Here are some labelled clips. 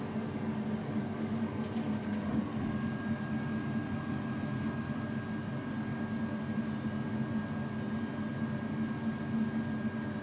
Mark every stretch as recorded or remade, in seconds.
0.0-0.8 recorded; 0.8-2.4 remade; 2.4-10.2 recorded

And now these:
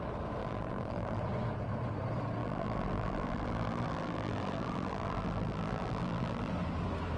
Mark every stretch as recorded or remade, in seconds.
0.0-0.4 recorded; 0.4-1.2 remade; 1.2-2.4 recorded; 2.4-6.5 remade; 6.5-7.2 recorded